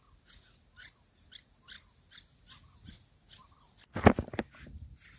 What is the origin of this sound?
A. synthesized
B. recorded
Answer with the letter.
B